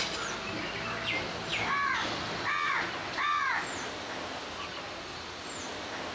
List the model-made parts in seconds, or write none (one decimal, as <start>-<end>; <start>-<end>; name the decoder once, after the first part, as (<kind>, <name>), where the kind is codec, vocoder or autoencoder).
none